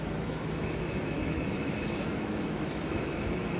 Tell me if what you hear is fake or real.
fake